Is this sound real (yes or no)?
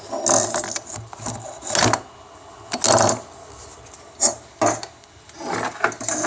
yes